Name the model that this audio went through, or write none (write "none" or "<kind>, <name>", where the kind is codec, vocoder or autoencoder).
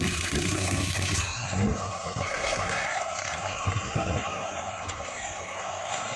codec, SNAC